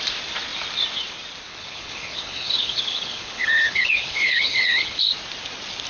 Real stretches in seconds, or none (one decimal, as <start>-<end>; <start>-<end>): 0.0-1.5; 5.0-5.9